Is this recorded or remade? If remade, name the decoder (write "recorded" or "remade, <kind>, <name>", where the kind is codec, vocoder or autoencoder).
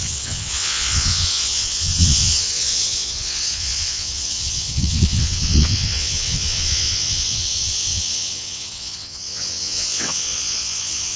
remade, vocoder, WaveNeXt